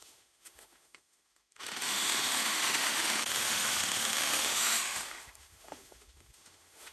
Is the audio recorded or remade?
remade